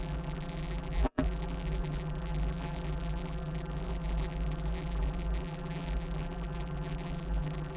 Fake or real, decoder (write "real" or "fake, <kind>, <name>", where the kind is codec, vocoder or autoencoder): fake, vocoder, BigVGAN v2